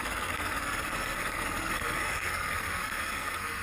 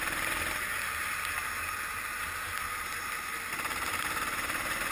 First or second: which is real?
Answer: second